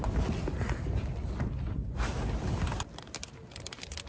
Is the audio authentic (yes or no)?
yes